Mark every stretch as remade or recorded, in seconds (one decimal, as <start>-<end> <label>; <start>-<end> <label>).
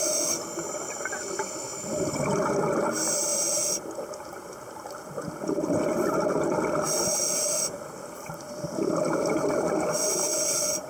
0.0-10.9 recorded